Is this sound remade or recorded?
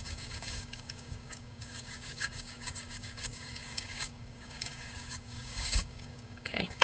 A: remade